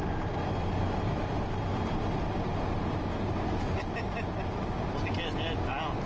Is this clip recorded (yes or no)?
yes